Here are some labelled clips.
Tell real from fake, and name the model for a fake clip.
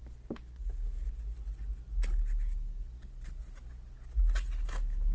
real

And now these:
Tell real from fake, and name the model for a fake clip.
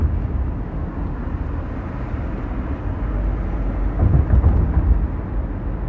real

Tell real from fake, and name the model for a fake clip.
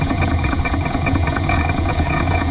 fake, vocoder, Vocos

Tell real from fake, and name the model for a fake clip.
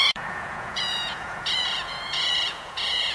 fake, vocoder, Vocos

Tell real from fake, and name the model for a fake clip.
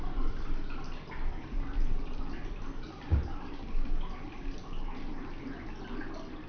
real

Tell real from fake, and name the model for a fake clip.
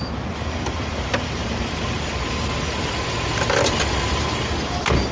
real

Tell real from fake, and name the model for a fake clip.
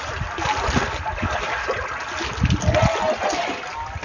real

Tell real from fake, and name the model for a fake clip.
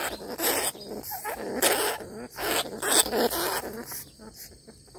real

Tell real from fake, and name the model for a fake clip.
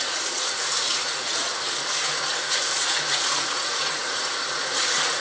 fake, vocoder, Vocos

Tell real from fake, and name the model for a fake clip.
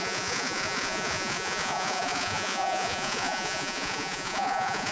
fake, vocoder, Vocos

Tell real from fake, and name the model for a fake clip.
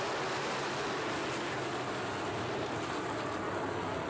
real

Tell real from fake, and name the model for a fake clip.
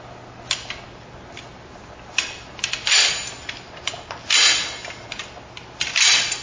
real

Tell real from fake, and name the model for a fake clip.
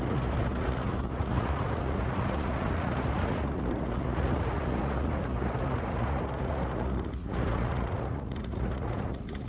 fake, vocoder, Vocos